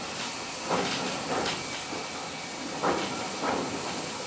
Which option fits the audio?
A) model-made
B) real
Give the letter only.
B